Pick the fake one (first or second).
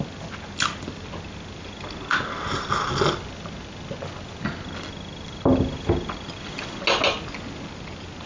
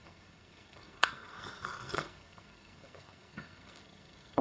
second